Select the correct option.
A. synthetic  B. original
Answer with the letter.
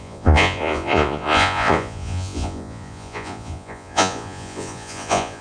A